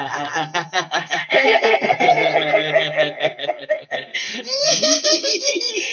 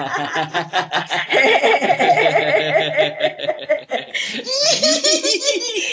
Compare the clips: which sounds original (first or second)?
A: second